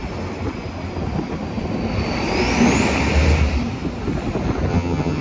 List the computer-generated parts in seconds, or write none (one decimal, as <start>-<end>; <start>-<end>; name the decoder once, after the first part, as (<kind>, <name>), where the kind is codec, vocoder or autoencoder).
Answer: 4.7-5.2 (vocoder, HiFi-GAN)